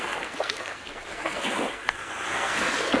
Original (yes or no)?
no